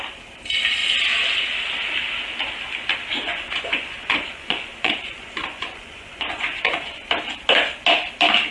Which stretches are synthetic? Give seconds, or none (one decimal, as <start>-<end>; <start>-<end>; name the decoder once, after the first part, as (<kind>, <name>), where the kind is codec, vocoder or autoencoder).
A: 3.3-7.1 (vocoder, Vocos)